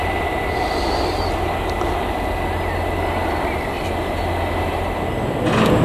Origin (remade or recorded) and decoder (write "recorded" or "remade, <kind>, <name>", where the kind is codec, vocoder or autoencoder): recorded